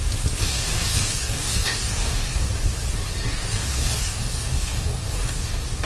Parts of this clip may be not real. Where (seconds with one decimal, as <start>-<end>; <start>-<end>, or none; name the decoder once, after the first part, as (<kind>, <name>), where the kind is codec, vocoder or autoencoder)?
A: 0.4-2.5 (codec, DAC); 3.3-5.9